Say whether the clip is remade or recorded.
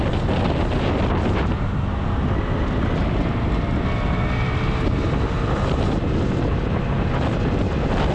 recorded